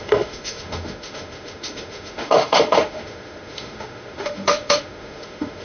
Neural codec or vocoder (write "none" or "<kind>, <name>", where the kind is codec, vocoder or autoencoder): autoencoder, DAC-VAE